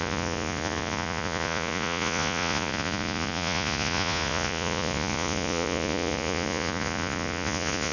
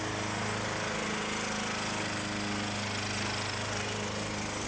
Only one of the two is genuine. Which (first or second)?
second